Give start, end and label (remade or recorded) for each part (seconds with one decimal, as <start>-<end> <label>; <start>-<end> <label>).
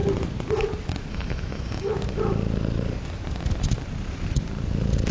0.0-1.1 recorded; 1.1-1.9 remade; 1.9-5.1 recorded